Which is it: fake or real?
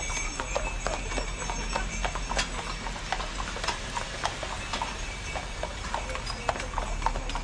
real